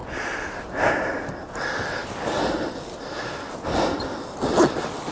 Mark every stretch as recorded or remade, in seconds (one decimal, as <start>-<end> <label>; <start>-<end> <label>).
0.0-5.1 recorded